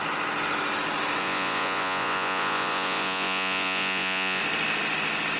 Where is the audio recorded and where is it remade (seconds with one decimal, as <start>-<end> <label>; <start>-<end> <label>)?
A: 0.0-1.2 recorded; 1.2-4.4 remade; 4.4-5.4 recorded